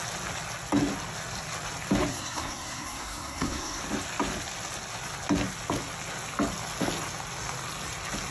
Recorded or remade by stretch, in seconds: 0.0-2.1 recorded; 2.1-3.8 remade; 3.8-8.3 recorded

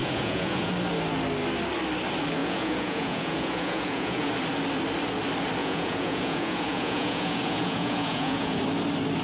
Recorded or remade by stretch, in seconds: 0.0-0.7 remade; 0.7-2.4 recorded; 2.4-4.3 remade; 4.3-5.6 recorded; 5.6-8.6 remade; 8.6-9.2 recorded

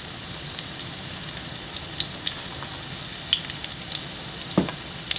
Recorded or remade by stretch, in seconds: 0.0-5.2 recorded